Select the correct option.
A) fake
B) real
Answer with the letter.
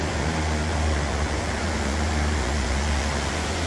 A